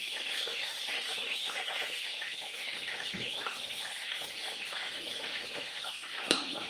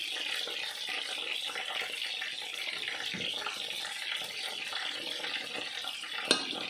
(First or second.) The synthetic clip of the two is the first